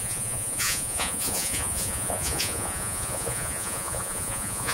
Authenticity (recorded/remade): remade